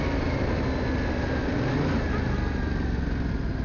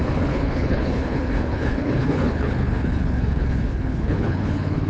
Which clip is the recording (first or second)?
first